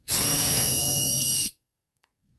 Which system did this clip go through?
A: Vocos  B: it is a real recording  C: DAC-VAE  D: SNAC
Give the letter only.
D